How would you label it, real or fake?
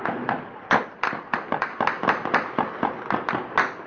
real